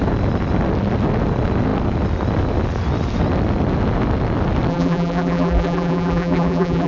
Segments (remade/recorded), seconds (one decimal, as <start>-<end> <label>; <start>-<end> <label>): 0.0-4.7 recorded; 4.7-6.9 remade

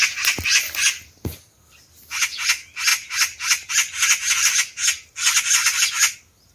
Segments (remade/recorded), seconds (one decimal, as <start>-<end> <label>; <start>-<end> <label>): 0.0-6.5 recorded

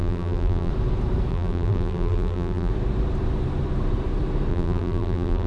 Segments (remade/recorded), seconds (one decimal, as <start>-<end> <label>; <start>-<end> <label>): 0.0-0.7 remade; 0.7-1.3 recorded; 1.3-2.7 remade; 2.7-4.5 recorded; 4.5-5.5 remade